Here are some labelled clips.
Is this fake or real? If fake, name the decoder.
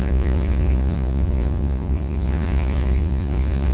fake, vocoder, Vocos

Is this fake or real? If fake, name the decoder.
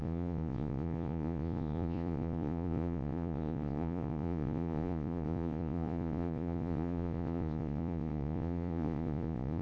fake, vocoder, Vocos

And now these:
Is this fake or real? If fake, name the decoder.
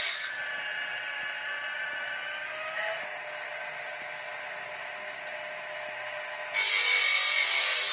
real